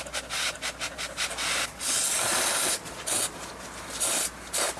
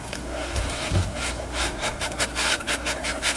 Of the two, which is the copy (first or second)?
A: second